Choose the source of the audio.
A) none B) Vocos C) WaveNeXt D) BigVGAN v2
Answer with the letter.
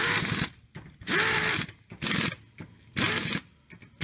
A